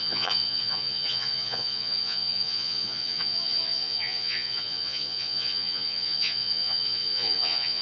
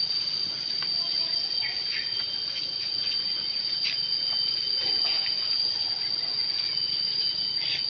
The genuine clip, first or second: second